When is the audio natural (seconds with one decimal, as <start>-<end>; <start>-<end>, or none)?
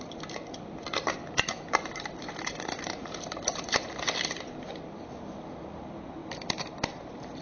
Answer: 0.0-1.2; 3.8-6.2